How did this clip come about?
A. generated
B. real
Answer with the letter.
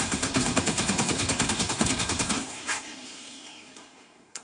A